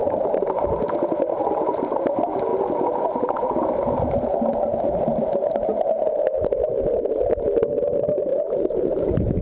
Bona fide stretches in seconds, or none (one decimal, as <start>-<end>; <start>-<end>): 0.5-8.3